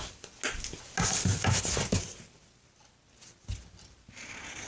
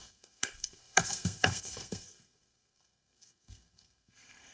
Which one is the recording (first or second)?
first